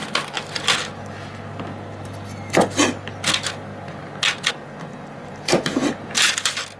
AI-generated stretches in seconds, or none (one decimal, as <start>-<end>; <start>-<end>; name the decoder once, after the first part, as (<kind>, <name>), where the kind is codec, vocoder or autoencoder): none